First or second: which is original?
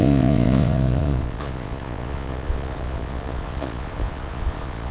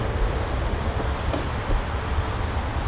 second